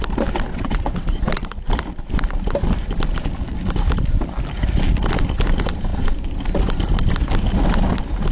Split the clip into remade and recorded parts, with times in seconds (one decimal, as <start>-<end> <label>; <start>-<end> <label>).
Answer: 0.0-0.5 recorded; 0.5-1.4 remade; 1.4-8.3 recorded